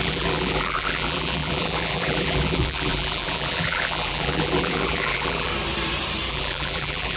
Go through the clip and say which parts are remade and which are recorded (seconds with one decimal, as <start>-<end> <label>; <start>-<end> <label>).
0.0-5.5 remade; 5.5-6.3 recorded; 6.3-7.2 remade